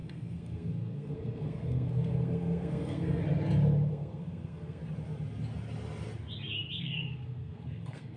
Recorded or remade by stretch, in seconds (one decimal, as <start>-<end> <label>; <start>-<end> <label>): 0.0-3.2 remade; 3.2-3.9 recorded; 3.9-4.8 remade; 4.8-6.8 recorded; 6.8-8.2 remade

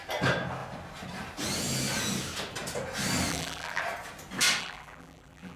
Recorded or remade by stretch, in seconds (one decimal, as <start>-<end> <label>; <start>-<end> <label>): 0.0-3.3 recorded; 3.3-3.8 remade; 3.8-4.6 recorded; 4.6-5.6 remade

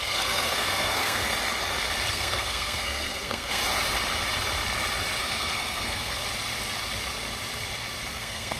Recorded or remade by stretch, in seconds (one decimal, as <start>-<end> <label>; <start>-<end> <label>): 0.0-1.2 remade; 1.2-2.1 recorded; 2.1-3.6 remade; 3.6-5.2 recorded; 5.2-6.2 remade; 6.2-8.1 recorded; 8.1-8.6 remade

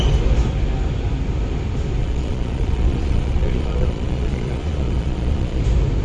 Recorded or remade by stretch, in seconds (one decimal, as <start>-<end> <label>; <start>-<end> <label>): 0.0-2.0 recorded; 2.0-5.6 remade; 5.6-6.0 recorded

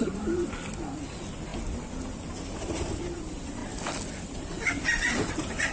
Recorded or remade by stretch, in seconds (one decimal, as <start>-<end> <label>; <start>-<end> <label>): 0.0-5.7 recorded

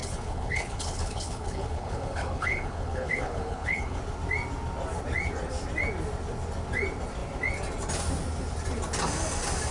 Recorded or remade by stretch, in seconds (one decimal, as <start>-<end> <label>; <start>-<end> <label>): 0.0-4.0 remade; 4.0-9.7 recorded